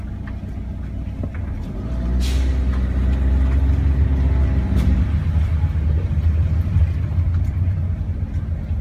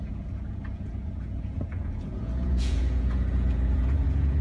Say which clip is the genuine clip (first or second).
first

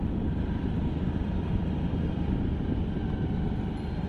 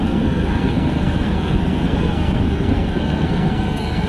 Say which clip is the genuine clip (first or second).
first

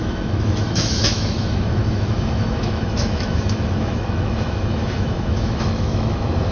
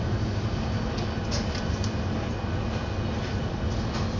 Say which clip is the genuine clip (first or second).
second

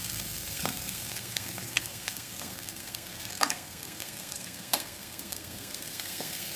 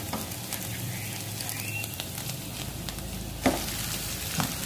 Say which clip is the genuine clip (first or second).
second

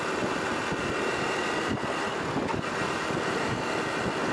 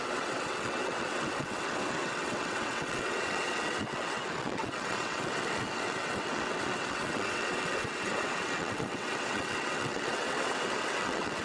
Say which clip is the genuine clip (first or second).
first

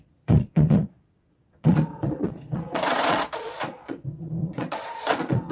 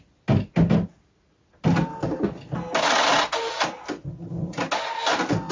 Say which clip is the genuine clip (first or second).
second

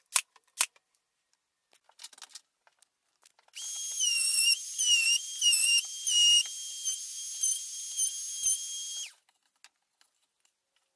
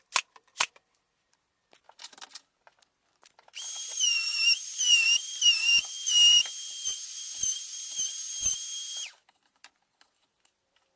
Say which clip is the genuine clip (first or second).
first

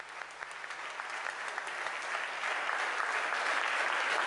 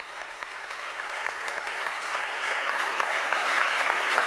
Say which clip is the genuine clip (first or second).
first